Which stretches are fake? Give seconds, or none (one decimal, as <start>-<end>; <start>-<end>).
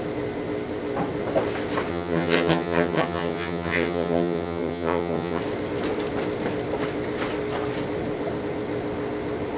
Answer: 1.9-5.4